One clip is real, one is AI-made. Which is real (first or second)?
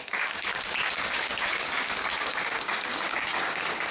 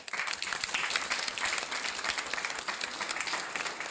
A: second